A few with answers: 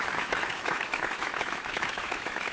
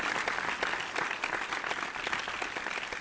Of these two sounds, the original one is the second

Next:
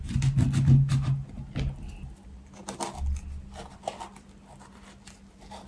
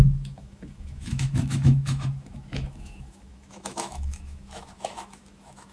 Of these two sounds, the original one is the first